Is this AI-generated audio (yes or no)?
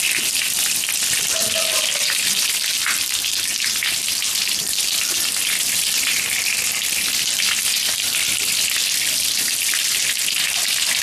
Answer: no